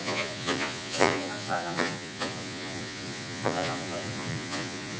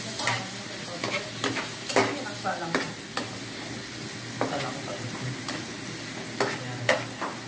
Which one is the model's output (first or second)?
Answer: first